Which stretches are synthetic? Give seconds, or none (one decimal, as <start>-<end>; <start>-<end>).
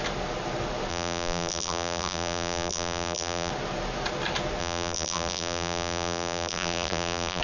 0.9-3.5; 4.6-7.4